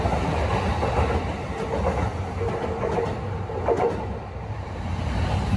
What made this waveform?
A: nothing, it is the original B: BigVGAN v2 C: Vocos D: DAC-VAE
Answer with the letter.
A